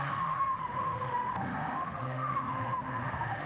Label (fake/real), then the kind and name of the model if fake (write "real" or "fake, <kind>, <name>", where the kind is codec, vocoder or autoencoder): fake, autoencoder, DAC-VAE